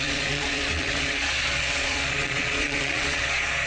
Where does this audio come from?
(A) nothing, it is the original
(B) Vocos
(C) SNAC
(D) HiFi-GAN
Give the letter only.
B